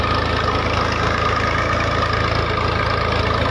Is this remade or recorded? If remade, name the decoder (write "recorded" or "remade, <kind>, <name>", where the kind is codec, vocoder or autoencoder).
recorded